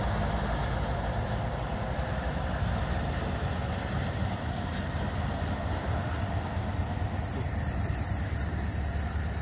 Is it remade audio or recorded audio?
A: recorded